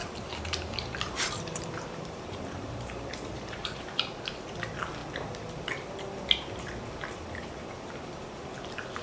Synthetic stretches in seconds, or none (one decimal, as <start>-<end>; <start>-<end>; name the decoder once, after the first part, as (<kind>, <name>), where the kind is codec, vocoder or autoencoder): 0.0-4.2 (vocoder, BigVGAN v2)